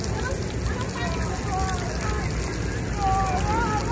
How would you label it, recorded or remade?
recorded